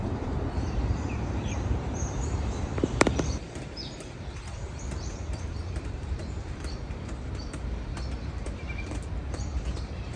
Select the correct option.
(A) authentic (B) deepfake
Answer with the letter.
B